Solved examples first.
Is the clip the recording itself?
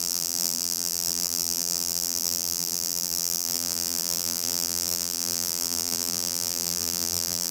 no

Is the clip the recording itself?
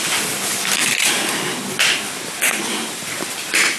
yes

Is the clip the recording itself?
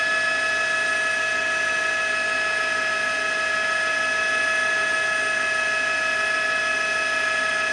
yes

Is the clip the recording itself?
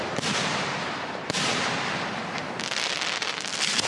no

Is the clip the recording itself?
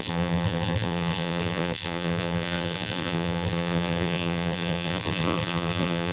no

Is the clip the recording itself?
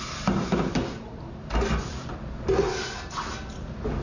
yes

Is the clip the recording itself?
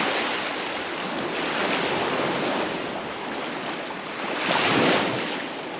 yes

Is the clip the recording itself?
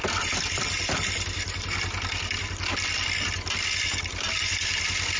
yes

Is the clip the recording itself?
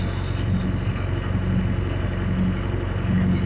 yes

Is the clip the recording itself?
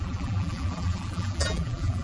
no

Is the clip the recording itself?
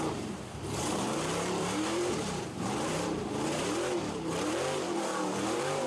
no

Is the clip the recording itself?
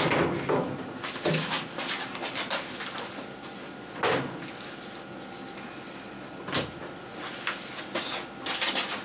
yes